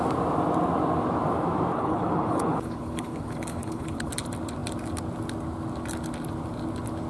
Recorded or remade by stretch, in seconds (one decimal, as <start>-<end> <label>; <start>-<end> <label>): 0.0-1.7 recorded; 1.7-4.1 remade; 4.1-7.1 recorded